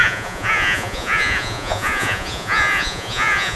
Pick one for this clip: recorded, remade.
remade